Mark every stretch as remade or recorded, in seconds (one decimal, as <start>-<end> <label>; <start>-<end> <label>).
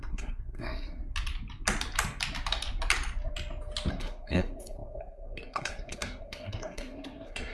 0.0-1.0 remade; 1.0-3.9 recorded; 3.9-7.5 remade